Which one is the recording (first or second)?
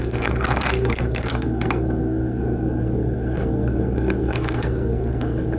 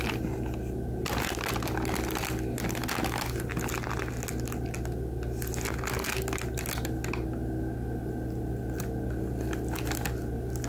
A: second